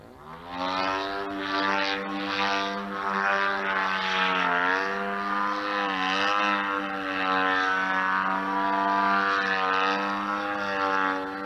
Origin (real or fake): real